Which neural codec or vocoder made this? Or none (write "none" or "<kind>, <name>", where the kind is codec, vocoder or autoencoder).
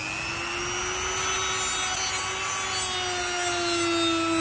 none